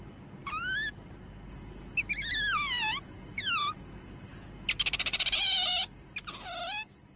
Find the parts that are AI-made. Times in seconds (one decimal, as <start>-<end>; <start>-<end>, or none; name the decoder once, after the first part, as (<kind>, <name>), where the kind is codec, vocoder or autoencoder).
none